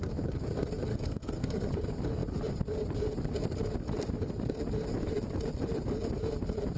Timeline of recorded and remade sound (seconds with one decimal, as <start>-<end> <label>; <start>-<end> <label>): 0.0-0.9 recorded; 0.9-1.7 remade; 1.7-6.8 recorded